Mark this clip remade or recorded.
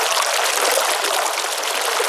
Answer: recorded